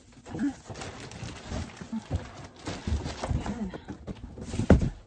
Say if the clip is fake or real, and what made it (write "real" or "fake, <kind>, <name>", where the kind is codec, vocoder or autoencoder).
real